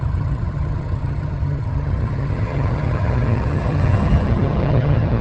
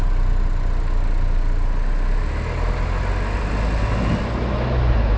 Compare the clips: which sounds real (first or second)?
second